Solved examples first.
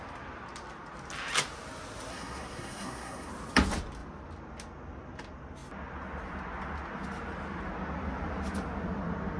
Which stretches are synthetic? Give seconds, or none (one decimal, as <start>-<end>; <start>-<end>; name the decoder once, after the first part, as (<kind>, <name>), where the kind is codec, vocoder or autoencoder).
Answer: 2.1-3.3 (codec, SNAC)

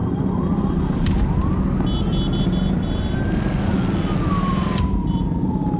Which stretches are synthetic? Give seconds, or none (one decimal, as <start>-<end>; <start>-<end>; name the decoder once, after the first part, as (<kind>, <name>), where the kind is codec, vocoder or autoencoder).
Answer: 2.8-3.7 (vocoder, BigVGAN v2); 4.3-5.8

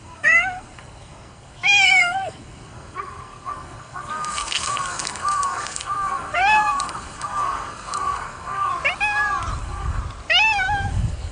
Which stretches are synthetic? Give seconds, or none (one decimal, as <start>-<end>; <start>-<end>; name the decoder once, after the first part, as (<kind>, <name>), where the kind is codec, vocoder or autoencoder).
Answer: 0.0-8.7 (codec, SNAC); 9.6-10.0; 10.9-11.3